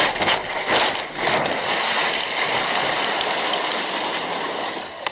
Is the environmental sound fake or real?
real